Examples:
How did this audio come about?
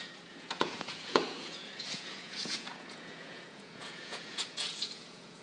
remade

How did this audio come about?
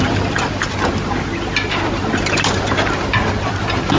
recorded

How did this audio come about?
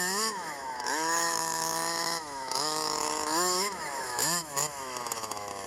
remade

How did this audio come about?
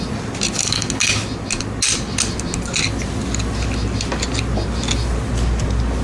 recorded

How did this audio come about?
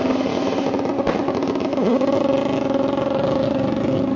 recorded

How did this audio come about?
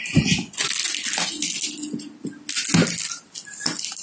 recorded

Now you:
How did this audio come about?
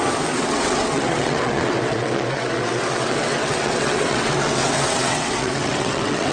remade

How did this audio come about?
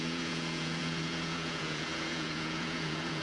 remade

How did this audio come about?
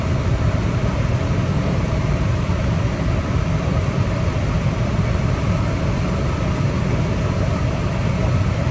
recorded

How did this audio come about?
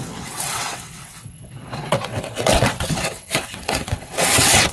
remade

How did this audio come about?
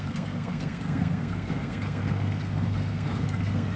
remade